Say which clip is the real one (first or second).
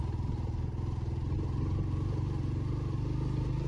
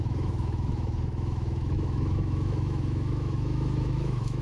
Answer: first